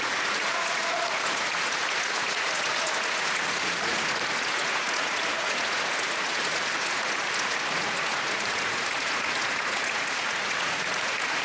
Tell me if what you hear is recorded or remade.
remade